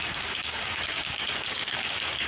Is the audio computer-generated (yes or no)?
yes